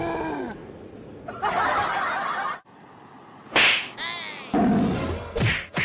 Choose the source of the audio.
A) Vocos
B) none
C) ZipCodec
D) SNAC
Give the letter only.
B